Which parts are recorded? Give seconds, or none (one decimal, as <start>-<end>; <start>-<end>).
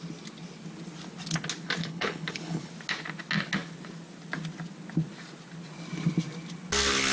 0.0-1.8; 2.7-7.1